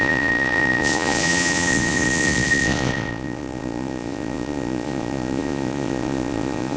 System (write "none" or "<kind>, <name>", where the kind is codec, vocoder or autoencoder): vocoder, Vocos